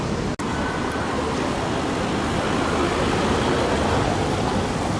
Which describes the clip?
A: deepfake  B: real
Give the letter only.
B